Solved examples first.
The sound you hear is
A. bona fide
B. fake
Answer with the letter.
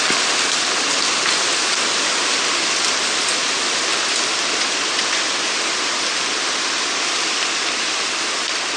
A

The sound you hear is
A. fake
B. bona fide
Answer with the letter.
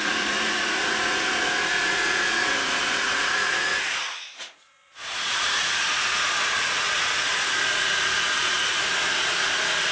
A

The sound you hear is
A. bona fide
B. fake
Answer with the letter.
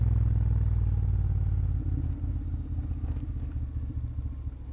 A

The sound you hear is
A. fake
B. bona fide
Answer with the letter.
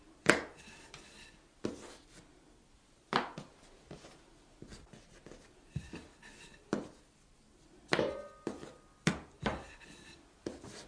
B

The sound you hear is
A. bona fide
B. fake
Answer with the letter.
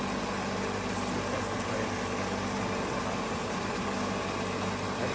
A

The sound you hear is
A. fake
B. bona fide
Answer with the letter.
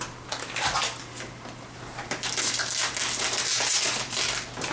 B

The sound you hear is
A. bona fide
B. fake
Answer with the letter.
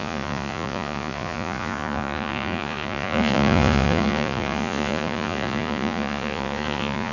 B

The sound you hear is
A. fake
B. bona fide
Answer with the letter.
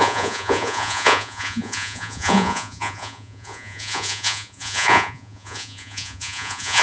A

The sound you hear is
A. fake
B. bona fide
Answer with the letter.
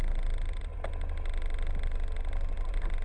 B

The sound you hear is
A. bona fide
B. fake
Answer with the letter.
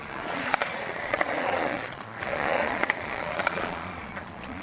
B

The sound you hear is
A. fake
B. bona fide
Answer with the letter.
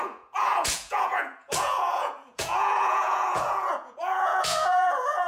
A